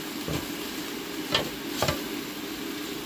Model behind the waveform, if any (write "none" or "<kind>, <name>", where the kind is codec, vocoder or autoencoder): none